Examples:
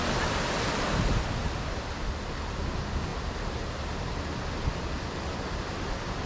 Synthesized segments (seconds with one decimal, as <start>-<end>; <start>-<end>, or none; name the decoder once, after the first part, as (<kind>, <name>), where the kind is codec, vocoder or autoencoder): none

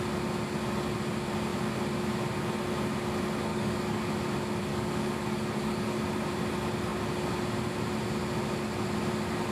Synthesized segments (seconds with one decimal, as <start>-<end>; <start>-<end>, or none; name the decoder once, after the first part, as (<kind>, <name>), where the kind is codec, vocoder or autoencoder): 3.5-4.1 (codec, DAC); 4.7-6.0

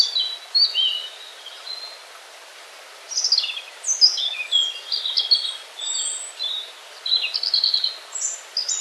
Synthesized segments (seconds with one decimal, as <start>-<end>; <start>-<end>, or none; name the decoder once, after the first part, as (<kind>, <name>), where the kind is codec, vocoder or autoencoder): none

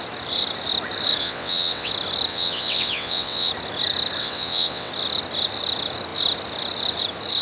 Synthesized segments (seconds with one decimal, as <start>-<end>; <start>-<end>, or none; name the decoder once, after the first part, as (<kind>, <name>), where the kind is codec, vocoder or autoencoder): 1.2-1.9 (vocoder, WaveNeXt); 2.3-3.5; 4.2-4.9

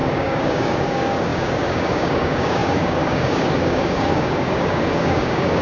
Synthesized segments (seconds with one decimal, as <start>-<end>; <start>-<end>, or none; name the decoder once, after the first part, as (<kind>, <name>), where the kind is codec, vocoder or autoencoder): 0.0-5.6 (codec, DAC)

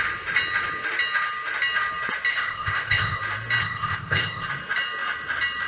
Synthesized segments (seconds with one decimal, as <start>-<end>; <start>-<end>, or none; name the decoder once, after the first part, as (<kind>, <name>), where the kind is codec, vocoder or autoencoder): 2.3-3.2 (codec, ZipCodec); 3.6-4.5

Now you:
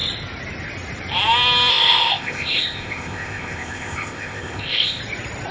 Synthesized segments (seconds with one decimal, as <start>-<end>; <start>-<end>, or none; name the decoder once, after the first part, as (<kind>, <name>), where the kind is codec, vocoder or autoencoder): 1.7-5.0 (codec, ZipCodec)

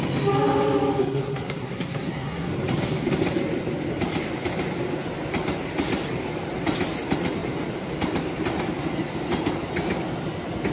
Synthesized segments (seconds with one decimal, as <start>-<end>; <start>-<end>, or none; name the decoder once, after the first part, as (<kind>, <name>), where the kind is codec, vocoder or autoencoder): 1.0-2.5 (codec, SNAC)